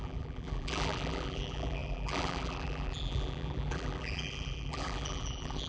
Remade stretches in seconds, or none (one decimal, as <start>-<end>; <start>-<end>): 0.0-5.7